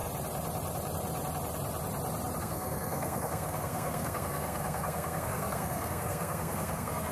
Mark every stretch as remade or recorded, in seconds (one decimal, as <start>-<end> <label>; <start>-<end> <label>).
0.0-2.4 recorded; 2.4-7.1 remade

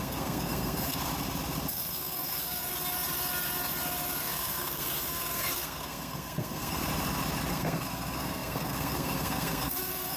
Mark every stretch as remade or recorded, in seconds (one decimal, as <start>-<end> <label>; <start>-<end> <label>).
0.0-1.1 remade; 1.1-1.7 recorded; 1.7-2.7 remade; 2.7-4.2 recorded; 4.2-6.8 remade; 6.8-7.5 recorded; 7.5-10.2 remade